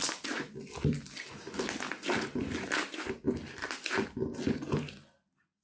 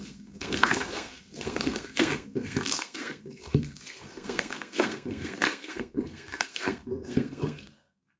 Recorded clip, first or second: first